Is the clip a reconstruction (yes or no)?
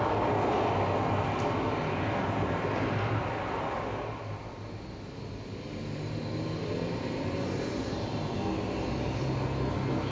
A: no